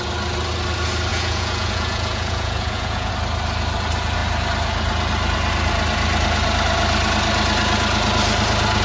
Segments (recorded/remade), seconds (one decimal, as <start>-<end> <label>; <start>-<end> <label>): 0.0-1.1 recorded; 1.1-3.1 remade; 3.1-8.8 recorded